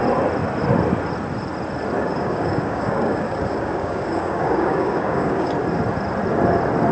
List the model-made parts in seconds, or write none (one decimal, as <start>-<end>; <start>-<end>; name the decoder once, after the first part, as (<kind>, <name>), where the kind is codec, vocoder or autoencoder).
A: 2.0-5.5 (codec, DAC)